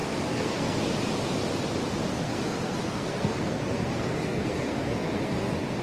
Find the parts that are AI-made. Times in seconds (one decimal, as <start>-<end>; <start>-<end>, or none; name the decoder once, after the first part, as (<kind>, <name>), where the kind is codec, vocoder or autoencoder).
0.0-0.8 (codec, SNAC); 2.1-5.8